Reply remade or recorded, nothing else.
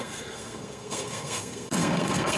remade